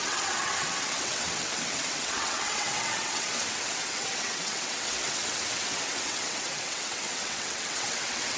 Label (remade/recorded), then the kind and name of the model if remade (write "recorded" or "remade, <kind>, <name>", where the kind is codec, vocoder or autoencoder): remade, vocoder, WaveNeXt